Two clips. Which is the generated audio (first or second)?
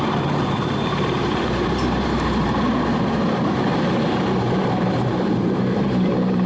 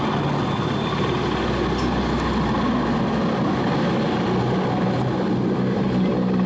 first